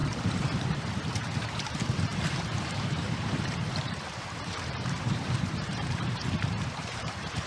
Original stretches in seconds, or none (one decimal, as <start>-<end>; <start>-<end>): none